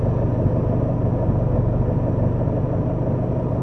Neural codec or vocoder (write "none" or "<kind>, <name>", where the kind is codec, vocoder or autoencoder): none